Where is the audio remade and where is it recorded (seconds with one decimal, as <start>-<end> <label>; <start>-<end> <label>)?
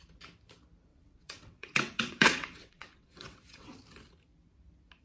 0.0-0.9 recorded; 0.9-3.7 remade; 3.7-5.0 recorded